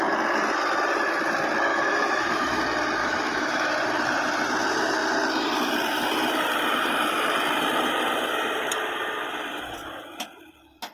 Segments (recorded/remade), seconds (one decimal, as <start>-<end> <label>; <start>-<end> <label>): 0.0-1.7 recorded; 1.7-2.6 remade; 2.6-3.0 recorded; 3.0-3.7 remade; 3.7-10.9 recorded